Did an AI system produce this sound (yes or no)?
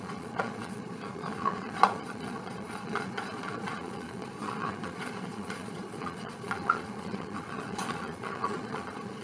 yes